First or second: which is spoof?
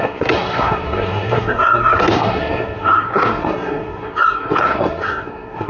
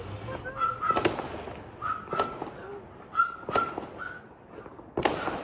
first